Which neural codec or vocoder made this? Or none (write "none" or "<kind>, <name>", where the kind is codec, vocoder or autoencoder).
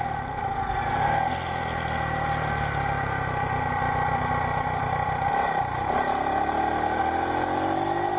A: none